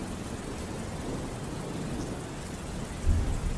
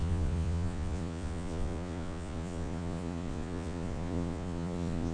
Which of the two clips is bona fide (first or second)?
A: first